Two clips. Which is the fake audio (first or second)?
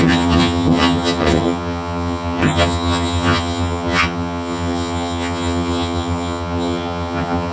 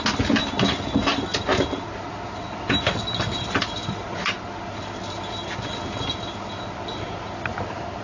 first